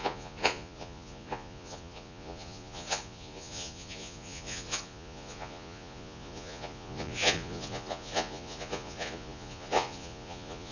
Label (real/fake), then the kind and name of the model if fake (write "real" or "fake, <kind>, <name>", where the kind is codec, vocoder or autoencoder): fake, vocoder, Vocos